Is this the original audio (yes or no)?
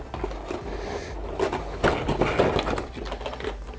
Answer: yes